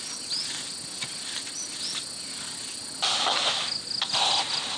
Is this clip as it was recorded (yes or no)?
yes